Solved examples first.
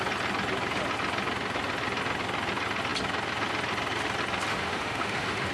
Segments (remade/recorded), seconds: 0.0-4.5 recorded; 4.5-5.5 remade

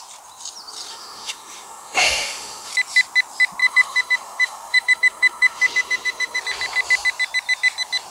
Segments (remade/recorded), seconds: 0.0-0.9 recorded; 0.9-2.7 remade; 2.7-3.6 recorded; 3.6-6.4 remade; 6.4-8.1 recorded

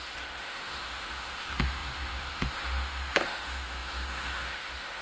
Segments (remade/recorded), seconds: 0.0-5.0 remade

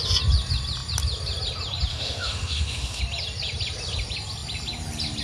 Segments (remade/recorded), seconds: 0.0-1.9 recorded; 1.9-3.0 remade; 3.0-5.2 recorded

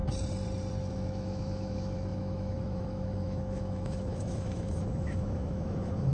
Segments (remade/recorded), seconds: 0.0-0.8 recorded; 0.8-6.1 remade

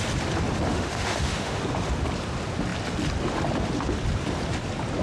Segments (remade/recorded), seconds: 0.0-0.7 recorded; 0.7-1.6 remade; 1.6-5.0 recorded

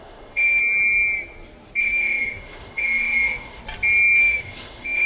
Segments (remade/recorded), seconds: 0.0-0.6 remade; 0.6-1.8 recorded; 1.8-3.6 remade; 3.6-4.2 recorded; 4.2-5.1 remade